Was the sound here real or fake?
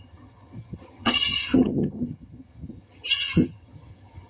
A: fake